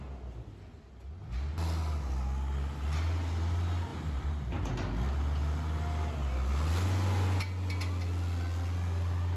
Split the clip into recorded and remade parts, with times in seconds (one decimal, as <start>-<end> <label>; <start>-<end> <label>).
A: 0.0-3.9 recorded; 3.9-4.7 remade; 4.7-9.4 recorded